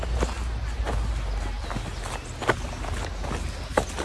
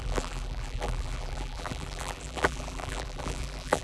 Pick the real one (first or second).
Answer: first